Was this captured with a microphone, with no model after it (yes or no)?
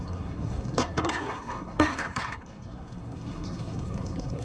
no